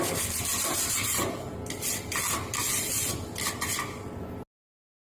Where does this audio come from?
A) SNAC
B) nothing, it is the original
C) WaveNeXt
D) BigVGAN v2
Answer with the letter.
B